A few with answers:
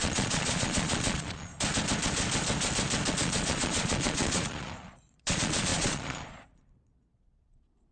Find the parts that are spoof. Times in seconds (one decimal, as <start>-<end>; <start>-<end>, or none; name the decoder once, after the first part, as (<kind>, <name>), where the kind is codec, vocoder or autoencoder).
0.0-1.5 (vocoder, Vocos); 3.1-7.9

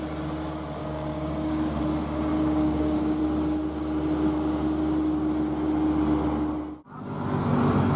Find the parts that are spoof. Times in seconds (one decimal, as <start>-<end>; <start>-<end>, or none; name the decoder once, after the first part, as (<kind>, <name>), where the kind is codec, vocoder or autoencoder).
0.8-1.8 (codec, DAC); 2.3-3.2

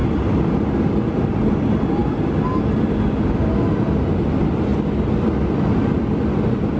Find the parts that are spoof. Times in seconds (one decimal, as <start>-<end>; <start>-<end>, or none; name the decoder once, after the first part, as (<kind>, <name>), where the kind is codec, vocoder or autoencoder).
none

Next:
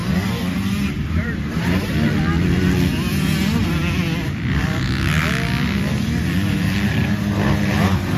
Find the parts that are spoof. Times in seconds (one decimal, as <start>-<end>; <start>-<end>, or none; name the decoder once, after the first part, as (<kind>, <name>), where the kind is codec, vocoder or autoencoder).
0.0-1.9 (vocoder, BigVGAN v2)

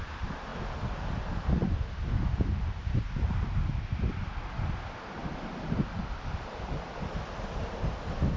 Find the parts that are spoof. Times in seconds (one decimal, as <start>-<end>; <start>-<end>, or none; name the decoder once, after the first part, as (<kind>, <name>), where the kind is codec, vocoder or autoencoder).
none

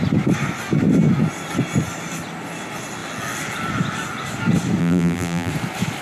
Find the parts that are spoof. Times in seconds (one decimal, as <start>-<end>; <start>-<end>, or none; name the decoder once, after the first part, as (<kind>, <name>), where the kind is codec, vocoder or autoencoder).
4.8-5.5 (vocoder, BigVGAN v2)

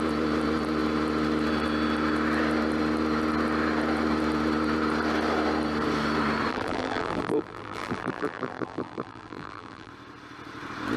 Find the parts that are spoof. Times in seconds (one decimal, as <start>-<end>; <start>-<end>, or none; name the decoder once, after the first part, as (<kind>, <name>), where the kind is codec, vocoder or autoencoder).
6.5-9.9 (vocoder, BigVGAN v2)

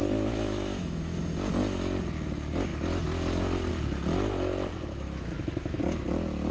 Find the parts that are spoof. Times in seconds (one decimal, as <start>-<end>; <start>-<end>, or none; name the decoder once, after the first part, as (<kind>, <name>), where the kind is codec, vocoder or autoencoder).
0.0-1.2 (autoencoder, DAC-VAE); 4.7-5.8